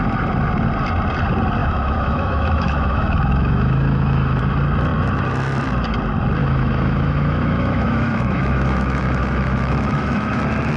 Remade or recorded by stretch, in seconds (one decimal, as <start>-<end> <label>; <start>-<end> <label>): 0.0-1.6 recorded; 1.6-4.4 remade; 4.4-6.4 recorded; 6.4-10.4 remade; 10.4-10.8 recorded

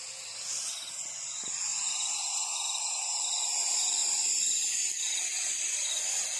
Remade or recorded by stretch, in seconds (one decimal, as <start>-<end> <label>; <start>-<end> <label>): 0.0-6.4 recorded

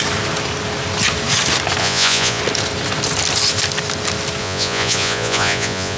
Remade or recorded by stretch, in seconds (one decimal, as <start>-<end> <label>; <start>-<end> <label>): 0.0-1.8 recorded; 1.8-2.4 remade; 2.4-4.4 recorded; 4.4-6.0 remade

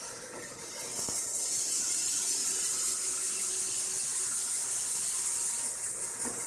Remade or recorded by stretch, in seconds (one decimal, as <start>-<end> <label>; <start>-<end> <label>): 0.0-4.0 recorded; 4.0-5.1 remade; 5.1-6.5 recorded